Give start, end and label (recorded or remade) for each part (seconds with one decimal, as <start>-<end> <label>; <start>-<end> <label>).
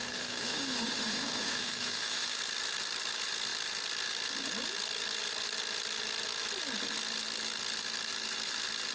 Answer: 0.0-2.4 remade; 2.4-8.9 recorded